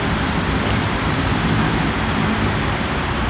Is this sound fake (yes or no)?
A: yes